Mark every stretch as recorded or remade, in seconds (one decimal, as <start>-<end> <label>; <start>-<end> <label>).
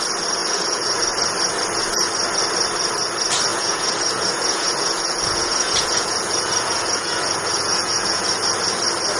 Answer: 0.0-0.4 recorded; 0.4-1.0 remade; 1.0-3.5 recorded; 3.5-8.3 remade; 8.3-9.2 recorded